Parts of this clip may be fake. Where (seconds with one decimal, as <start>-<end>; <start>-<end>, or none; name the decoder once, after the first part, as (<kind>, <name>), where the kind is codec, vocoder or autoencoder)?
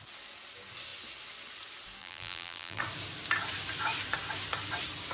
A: 2.0-2.8 (vocoder, BigVGAN v2)